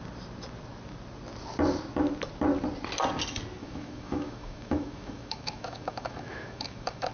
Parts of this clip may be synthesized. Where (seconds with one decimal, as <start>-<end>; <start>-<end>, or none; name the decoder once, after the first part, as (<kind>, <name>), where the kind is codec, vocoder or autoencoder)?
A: 3.6-7.1 (autoencoder, DAC-VAE)